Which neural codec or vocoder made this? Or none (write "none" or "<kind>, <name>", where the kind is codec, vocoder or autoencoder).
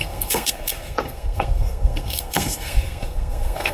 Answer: codec, SNAC